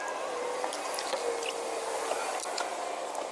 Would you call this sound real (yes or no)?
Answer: yes